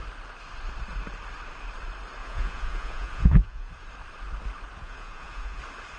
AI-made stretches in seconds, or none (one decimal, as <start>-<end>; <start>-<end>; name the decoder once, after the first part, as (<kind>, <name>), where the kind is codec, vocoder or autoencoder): 2.2-3.7 (vocoder, Vocos); 4.8-5.6